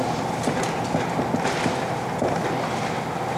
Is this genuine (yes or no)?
yes